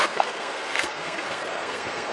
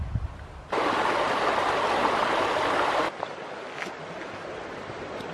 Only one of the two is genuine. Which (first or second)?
second